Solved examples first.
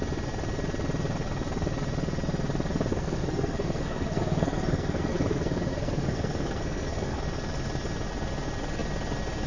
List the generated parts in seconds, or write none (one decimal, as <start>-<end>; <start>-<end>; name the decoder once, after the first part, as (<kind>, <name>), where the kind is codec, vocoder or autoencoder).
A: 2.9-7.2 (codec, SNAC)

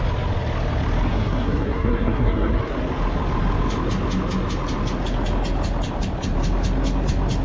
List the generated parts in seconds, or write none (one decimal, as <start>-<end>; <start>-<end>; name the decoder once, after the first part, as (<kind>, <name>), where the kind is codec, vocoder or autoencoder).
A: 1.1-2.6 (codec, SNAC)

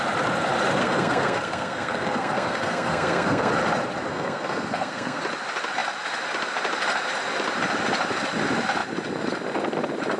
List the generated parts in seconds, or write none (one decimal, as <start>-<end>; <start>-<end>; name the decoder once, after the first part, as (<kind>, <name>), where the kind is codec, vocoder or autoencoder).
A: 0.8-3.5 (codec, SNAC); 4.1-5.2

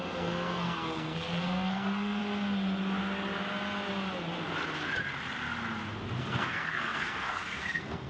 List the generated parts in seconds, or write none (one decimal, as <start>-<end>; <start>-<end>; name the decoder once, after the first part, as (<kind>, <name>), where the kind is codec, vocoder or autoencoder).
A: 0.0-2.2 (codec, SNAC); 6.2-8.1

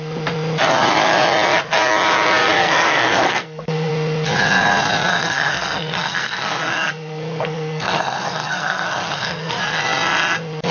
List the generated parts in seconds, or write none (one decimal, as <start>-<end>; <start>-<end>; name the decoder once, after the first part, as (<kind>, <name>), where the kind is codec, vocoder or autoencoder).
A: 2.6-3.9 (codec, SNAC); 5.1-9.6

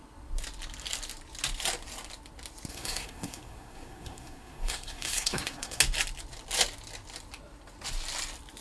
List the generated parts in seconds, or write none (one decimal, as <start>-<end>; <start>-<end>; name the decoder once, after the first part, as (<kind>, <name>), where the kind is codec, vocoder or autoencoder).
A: 2.7-5.8 (codec, SNAC)

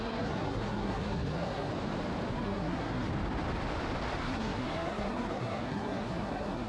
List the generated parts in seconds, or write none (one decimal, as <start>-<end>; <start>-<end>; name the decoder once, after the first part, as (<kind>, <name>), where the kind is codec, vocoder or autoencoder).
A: 0.0-1.7 (codec, SNAC); 2.3-3.1; 4.2-6.7

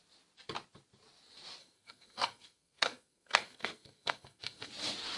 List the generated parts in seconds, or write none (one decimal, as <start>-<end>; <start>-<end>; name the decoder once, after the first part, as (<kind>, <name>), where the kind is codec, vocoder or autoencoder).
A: 1.6-4.7 (codec, SNAC)